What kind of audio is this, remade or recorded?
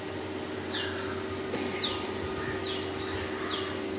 recorded